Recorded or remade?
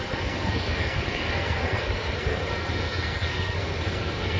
remade